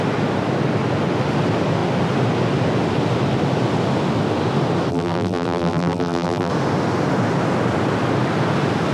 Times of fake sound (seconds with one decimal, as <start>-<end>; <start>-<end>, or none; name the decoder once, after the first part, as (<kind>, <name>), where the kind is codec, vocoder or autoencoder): 4.9-6.5 (vocoder, BigVGAN v2)